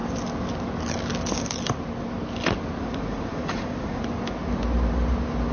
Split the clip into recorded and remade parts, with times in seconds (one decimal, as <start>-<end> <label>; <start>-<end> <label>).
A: 0.0-2.8 recorded; 2.8-4.0 remade; 4.0-5.5 recorded